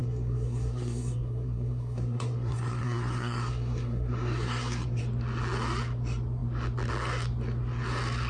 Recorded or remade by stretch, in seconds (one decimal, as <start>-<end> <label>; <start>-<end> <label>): 0.0-5.0 remade; 5.0-8.3 recorded